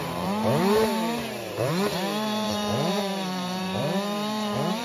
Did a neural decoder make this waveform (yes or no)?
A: yes